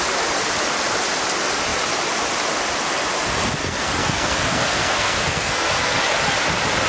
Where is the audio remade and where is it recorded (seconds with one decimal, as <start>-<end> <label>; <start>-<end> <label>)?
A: 0.0-3.6 recorded; 3.6-6.0 remade; 6.0-6.9 recorded